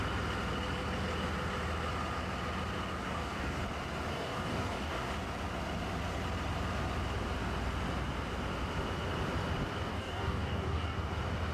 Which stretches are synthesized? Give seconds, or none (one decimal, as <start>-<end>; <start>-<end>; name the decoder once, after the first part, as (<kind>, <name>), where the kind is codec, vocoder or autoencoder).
3.0-3.6 (codec, DAC); 4.1-5.1; 9.9-11.1